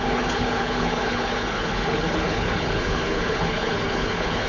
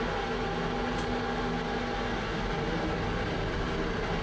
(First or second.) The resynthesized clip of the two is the first